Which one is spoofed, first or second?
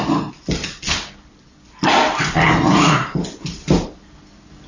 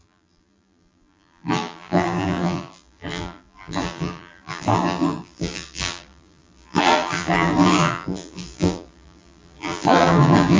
second